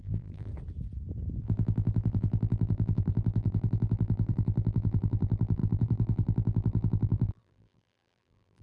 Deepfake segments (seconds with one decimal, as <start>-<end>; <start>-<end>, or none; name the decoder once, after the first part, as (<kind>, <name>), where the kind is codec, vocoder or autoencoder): 0.0-0.5 (vocoder, BigVGAN v2); 1.4-8.6